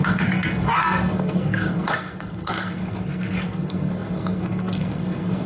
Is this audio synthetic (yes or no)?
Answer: yes